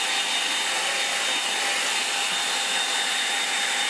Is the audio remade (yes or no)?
no